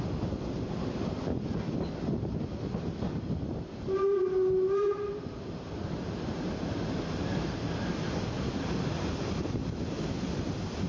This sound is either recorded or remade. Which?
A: recorded